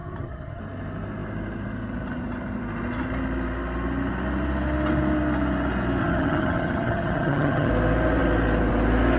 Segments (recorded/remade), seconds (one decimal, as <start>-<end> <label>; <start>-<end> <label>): 0.0-0.6 remade; 0.6-6.0 recorded; 6.0-7.7 remade; 7.7-9.2 recorded